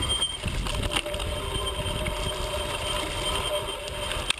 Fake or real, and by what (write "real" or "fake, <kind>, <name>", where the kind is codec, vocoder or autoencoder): real